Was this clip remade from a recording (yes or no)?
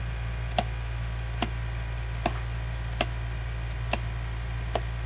no